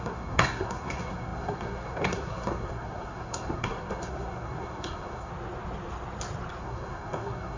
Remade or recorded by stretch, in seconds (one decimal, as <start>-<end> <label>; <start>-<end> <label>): 0.0-5.3 remade; 5.3-6.6 recorded; 6.6-7.6 remade